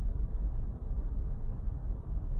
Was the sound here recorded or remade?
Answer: remade